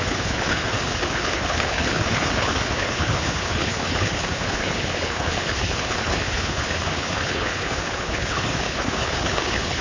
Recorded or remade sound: remade